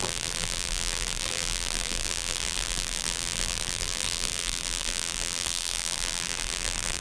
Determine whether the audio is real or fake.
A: fake